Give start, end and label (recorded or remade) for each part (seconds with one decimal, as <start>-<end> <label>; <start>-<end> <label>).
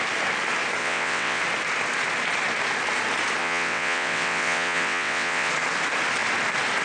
0.0-0.8 recorded; 0.8-1.4 remade; 1.4-3.4 recorded; 3.4-5.5 remade; 5.5-6.8 recorded